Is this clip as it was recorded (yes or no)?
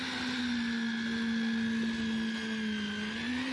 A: yes